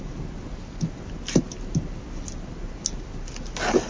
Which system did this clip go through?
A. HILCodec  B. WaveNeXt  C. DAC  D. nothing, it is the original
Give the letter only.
D